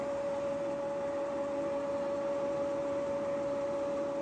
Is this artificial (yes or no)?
no